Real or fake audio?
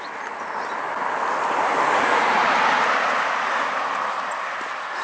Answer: real